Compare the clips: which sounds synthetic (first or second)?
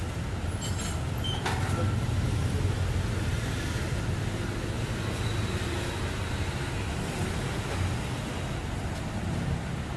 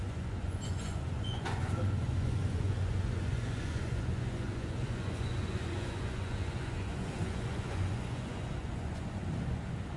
second